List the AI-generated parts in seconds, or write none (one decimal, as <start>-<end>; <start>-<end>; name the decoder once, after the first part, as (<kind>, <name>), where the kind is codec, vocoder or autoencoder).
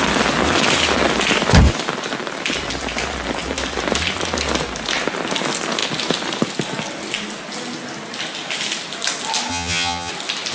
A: 9.5-10.1 (vocoder, HiFi-GAN)